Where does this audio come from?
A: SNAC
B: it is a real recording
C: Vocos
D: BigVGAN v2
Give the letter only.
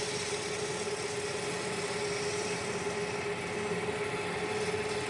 B